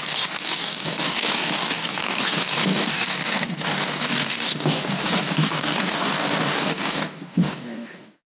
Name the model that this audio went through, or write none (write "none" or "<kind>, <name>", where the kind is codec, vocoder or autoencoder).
codec, DAC